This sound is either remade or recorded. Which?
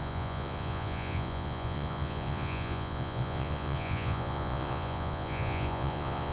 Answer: remade